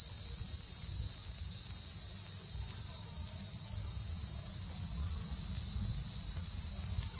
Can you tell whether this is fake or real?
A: real